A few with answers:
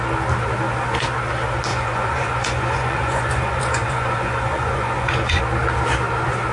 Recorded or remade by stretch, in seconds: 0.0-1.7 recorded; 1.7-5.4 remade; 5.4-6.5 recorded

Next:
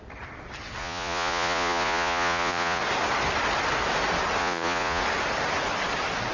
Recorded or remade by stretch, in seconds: 0.0-0.8 recorded; 0.8-2.8 remade; 2.8-4.4 recorded; 4.4-5.0 remade; 5.0-6.3 recorded

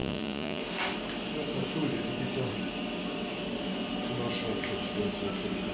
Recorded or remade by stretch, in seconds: 0.0-0.6 remade; 0.6-5.7 recorded

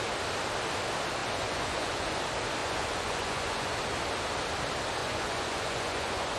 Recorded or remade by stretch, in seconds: 0.0-1.2 recorded; 1.2-2.2 remade; 2.2-2.6 recorded; 2.6-3.8 remade; 3.8-5.0 recorded; 5.0-6.4 remade